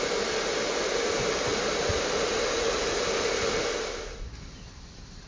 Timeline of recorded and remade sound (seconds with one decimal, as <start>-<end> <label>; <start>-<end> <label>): 0.0-5.3 recorded